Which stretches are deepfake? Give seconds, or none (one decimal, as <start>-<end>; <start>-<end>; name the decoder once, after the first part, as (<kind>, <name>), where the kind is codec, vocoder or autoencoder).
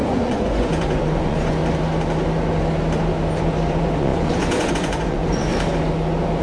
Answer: 0.0-1.6 (vocoder, Vocos); 3.4-5.5